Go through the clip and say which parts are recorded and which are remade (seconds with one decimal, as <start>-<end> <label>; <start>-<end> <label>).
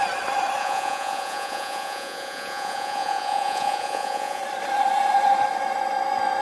0.0-0.6 recorded; 0.6-4.4 remade; 4.4-6.4 recorded